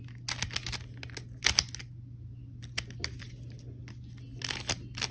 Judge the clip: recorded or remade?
recorded